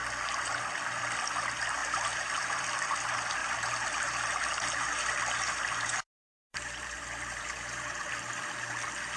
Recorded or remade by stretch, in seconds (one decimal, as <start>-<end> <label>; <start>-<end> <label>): 0.0-1.8 recorded; 1.8-2.6 remade; 2.6-3.4 recorded; 3.4-8.2 remade; 8.2-9.2 recorded